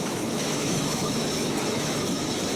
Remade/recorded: remade